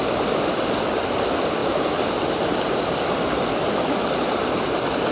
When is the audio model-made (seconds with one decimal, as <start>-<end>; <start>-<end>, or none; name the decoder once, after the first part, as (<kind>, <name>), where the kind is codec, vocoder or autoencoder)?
none